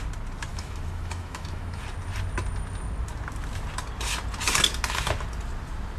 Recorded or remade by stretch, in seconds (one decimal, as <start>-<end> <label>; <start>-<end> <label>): 0.0-0.5 recorded; 0.5-1.8 remade; 1.8-6.0 recorded